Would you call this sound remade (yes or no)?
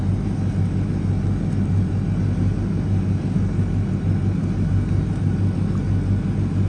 no